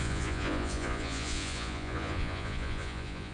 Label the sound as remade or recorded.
remade